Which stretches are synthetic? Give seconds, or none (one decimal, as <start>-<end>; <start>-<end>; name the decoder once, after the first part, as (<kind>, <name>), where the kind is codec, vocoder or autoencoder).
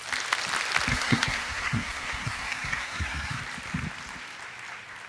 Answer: 0.9-3.4 (codec, SNAC)